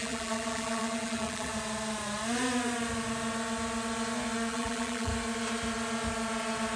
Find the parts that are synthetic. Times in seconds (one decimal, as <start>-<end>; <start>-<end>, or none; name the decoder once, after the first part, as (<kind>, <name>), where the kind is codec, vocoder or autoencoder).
0.0-1.5 (vocoder, BigVGAN v2); 4.5-5.1